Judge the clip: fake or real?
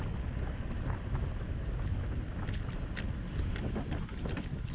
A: real